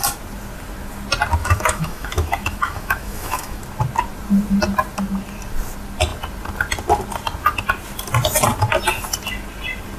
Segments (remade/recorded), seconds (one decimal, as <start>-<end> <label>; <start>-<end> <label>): 0.0-1.4 recorded; 1.4-3.6 remade; 3.6-10.0 recorded